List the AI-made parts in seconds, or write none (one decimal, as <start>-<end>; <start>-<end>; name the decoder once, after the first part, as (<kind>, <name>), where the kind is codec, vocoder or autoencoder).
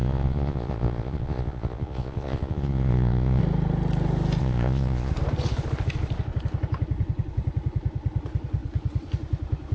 0.0-3.4 (vocoder, Vocos); 4.4-5.1